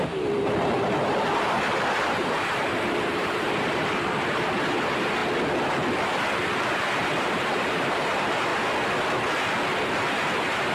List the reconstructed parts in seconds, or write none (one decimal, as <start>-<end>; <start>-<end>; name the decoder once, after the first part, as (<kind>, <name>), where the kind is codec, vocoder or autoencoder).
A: 0.0-5.2 (vocoder, BigVGAN v2); 6.0-8.5; 10.1-10.7